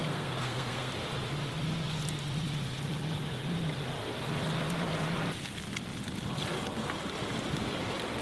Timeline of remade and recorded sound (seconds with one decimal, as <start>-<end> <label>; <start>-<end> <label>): 0.0-0.9 remade; 0.9-8.2 recorded